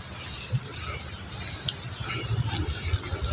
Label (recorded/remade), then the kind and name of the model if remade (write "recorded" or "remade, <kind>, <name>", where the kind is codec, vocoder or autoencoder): recorded